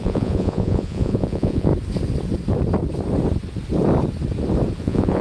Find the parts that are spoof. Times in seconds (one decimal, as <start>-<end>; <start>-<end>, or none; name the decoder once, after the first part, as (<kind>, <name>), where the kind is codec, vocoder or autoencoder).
0.0-1.7 (vocoder, Vocos); 4.8-5.2